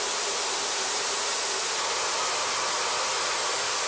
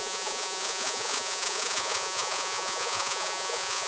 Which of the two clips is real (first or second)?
first